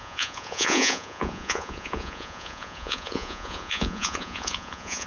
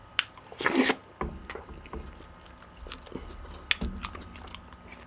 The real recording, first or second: second